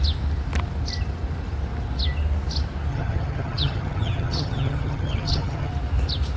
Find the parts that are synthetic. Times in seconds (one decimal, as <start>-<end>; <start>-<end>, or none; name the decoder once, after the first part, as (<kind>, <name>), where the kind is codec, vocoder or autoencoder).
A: 2.9-5.7 (vocoder, HiFi-GAN)